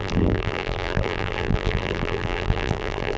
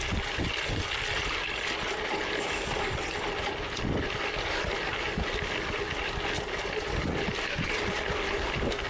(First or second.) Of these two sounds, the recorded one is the second